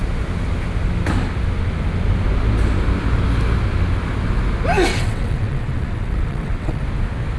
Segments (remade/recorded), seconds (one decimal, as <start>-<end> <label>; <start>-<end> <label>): 0.0-4.9 recorded; 4.9-6.8 remade; 6.8-7.4 recorded